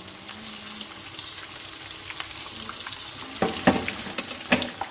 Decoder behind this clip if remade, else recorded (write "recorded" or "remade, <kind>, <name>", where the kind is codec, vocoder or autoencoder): recorded